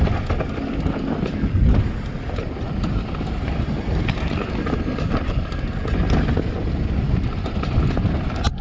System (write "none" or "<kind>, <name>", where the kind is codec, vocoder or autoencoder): none